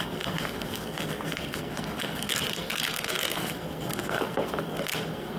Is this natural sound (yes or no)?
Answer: no